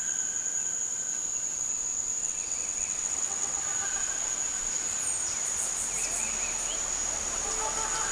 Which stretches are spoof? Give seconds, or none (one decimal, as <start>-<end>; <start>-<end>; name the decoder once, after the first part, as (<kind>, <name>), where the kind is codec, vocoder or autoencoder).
2.2-3.6 (vocoder, WaveNeXt)